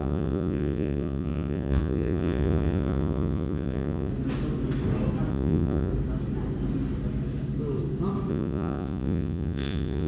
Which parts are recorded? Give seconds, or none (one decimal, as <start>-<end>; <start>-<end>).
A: 4.1-5.3; 5.9-8.3